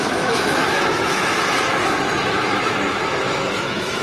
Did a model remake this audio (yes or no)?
yes